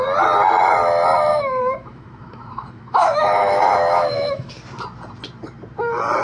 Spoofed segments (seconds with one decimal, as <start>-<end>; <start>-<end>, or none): 1.3-4.5

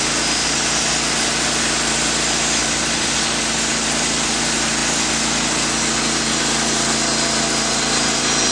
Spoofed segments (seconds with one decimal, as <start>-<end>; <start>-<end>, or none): none

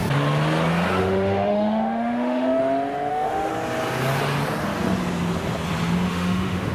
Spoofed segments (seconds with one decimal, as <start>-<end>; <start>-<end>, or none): 1.0-2.6; 3.1-3.5; 6.1-6.7

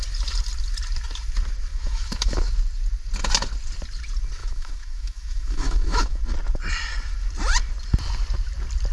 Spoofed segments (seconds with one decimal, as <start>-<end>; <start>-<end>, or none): 1.7-2.5; 4.4-6.2

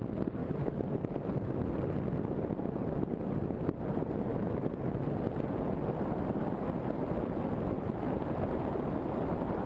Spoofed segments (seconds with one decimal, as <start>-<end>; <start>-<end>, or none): 0.4-1.0; 4.3-4.9

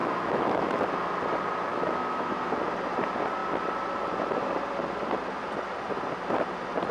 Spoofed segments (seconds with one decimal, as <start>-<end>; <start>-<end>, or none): 0.0-0.8; 1.7-2.3